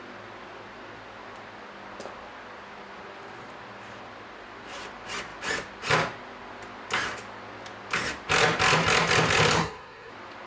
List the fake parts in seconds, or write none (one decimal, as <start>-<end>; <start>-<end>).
9.6-10.1